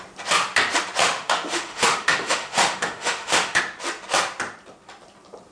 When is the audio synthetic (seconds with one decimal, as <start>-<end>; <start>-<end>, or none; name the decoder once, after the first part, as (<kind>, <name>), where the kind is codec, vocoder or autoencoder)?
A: 1.0-3.6 (autoencoder, DAC-VAE)